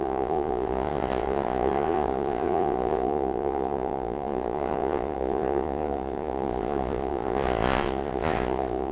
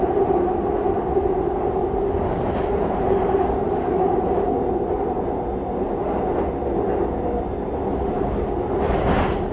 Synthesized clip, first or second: first